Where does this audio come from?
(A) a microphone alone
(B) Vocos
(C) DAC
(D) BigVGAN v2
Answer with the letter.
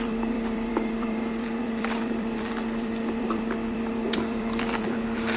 D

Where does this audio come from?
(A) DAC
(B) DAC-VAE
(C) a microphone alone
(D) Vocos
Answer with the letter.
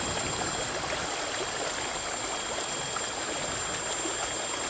C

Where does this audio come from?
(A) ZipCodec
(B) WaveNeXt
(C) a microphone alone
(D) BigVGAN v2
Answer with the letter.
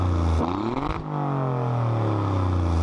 C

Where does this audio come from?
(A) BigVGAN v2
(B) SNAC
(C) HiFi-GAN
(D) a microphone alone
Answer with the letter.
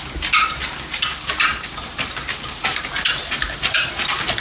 D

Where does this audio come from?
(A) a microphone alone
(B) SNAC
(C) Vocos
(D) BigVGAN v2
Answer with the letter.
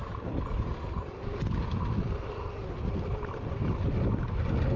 A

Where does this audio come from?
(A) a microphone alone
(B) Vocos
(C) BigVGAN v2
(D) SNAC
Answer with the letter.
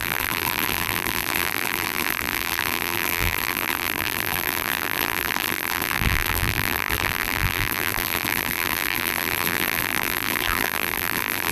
C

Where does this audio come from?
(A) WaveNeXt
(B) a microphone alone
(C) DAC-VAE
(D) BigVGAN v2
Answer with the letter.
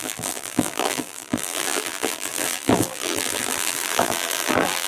D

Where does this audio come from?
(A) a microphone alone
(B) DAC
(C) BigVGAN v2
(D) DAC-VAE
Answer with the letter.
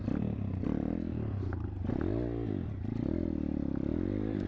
A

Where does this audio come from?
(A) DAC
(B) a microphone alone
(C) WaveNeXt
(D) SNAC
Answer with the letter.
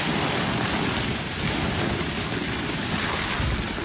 B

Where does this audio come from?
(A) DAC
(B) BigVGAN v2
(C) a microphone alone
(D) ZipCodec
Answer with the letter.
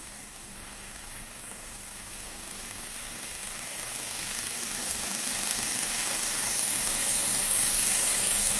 A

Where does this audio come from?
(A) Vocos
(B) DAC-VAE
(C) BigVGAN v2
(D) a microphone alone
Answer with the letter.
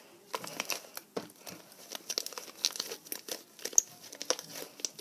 D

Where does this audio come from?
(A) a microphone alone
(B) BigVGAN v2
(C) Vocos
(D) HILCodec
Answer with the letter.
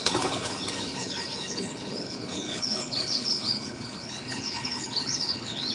D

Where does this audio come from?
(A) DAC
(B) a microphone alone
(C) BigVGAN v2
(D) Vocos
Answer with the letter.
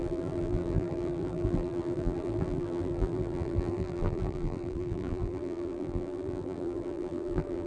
C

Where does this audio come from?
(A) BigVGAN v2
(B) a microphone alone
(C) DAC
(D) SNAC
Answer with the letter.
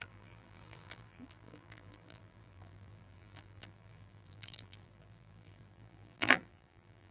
A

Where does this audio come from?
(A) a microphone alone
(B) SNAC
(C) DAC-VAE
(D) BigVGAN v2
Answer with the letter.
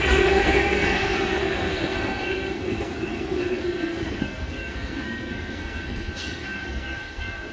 B